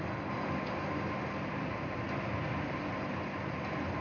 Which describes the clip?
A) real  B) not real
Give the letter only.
A